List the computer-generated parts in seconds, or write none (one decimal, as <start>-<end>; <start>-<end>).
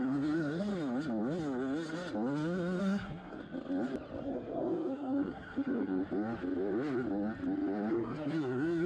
0.0-0.7; 2.8-3.4; 4.2-6.0; 7.9-8.9